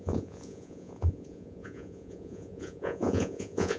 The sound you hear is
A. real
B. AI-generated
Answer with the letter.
B